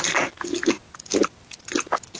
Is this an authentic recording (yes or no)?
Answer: yes